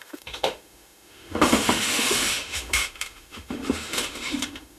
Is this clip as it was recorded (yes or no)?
no